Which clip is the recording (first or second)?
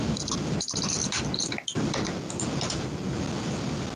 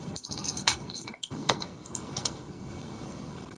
first